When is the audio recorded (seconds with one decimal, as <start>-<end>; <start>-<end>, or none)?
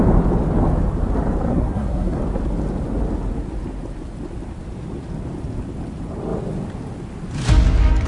0.0-1.5; 2.2-8.1